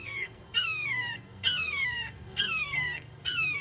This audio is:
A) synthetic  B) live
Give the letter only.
A